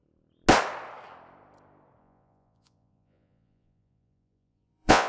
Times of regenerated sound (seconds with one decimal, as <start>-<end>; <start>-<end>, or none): 2.0-5.1